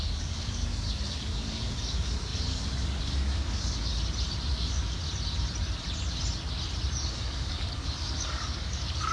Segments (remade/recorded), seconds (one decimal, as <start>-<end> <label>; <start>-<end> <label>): 0.0-3.9 remade; 3.9-4.5 recorded; 4.5-5.0 remade; 5.0-7.0 recorded; 7.0-9.1 remade